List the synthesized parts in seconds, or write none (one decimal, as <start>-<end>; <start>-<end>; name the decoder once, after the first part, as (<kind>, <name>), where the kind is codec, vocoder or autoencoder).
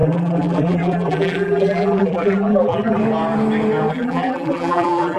0.0-3.0 (vocoder, BigVGAN v2); 3.9-5.2